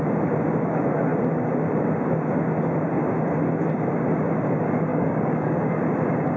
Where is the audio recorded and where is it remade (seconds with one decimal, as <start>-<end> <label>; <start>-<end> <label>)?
0.0-4.9 recorded; 4.9-5.7 remade; 5.7-6.4 recorded